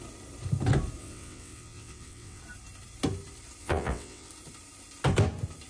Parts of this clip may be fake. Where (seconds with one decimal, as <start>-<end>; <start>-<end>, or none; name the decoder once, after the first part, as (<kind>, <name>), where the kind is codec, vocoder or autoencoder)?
1.0-2.4 (vocoder, WaveNeXt); 3.6-4.3